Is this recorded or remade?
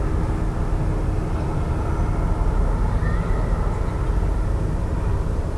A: recorded